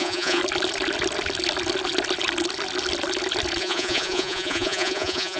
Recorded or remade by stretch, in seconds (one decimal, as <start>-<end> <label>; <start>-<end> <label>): 0.0-0.4 remade; 0.4-3.6 recorded; 3.6-5.4 remade